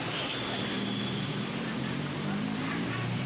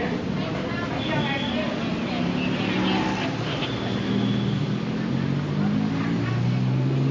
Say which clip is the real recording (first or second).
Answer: second